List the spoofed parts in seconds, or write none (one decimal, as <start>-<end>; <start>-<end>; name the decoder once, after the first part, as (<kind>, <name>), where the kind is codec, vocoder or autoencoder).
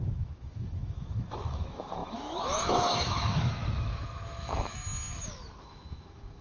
0.0-6.4 (autoencoder, DAC-VAE)